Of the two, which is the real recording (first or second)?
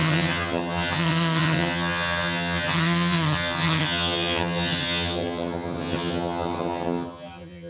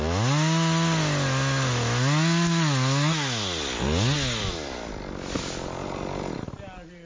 second